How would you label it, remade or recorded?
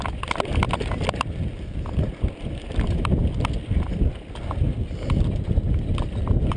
recorded